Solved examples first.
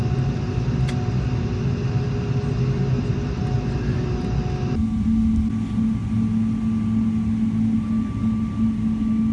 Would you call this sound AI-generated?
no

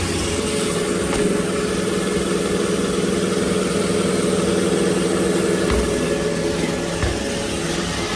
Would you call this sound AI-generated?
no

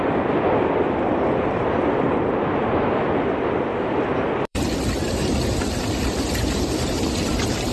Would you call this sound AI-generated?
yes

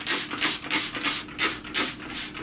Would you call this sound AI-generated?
no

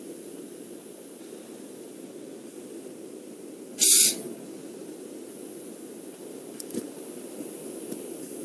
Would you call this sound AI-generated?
yes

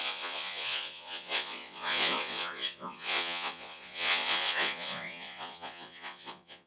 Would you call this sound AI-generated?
yes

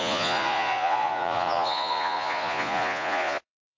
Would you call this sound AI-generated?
yes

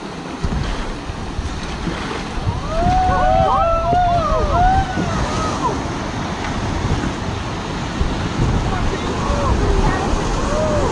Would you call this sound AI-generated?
no